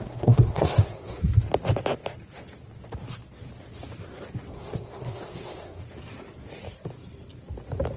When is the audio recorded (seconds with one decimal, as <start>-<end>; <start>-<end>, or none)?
1.2-4.5; 5.8-8.0

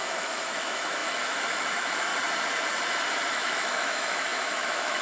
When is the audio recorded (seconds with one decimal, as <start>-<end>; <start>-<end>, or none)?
2.1-3.3

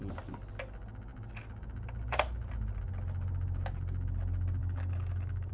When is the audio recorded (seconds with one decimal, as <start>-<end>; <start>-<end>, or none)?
0.0-4.6

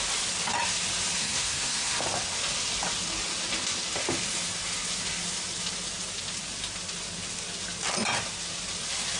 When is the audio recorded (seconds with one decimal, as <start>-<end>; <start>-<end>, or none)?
0.0-1.2; 2.0-9.2

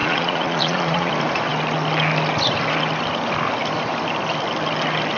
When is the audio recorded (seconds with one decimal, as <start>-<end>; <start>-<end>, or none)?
1.1-5.2

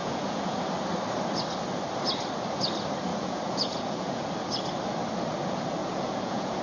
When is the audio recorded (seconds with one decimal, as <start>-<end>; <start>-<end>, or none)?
0.7-3.1; 4.3-5.8

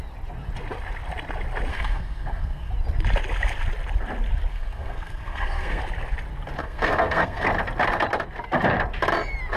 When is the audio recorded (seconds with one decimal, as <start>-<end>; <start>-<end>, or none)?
0.0-1.7; 2.7-4.5; 5.8-6.6; 7.5-9.6